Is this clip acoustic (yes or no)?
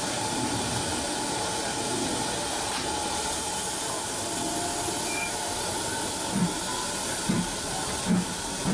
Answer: yes